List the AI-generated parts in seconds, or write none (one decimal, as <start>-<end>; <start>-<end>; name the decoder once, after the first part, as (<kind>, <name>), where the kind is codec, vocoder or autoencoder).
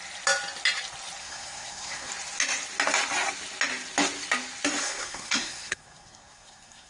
1.2-2.1 (codec, SNAC); 4.8-6.9